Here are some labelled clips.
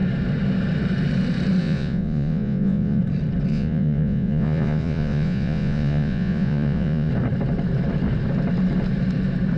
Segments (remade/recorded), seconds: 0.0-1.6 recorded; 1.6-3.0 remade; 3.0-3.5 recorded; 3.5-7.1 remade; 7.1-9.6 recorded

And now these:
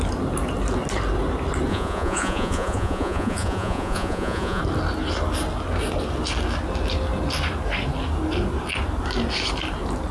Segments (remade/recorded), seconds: 0.0-1.7 recorded; 1.7-4.6 remade; 4.6-10.1 recorded

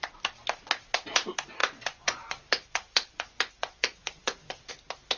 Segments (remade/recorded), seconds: 0.0-1.6 recorded; 1.6-4.7 remade; 4.7-5.2 recorded

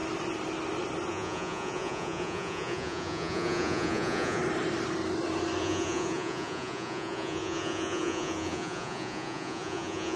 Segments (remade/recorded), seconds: 0.0-1.1 recorded; 1.1-4.4 remade; 4.4-5.6 recorded; 5.6-10.2 remade

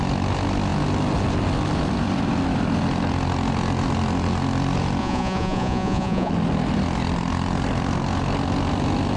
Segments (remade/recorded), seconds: 0.0-5.0 recorded; 5.0-6.3 remade; 6.3-9.2 recorded

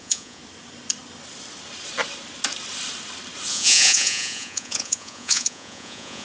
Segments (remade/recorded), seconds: 0.0-0.4 remade; 0.4-3.5 recorded; 3.5-6.2 remade

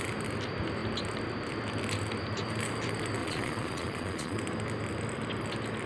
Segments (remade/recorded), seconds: 0.0-3.2 recorded; 3.2-4.4 remade; 4.4-5.9 recorded

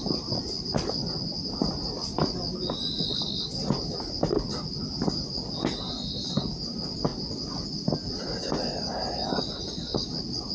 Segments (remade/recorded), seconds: 0.0-10.5 recorded